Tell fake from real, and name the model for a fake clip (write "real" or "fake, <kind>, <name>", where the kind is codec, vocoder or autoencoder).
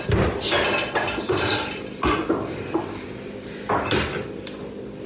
real